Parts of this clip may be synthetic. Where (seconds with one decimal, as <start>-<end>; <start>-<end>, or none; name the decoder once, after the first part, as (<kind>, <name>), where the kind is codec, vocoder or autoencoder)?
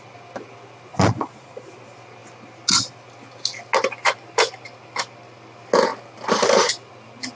0.9-1.7 (vocoder, Vocos)